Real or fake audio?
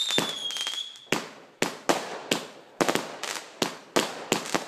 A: real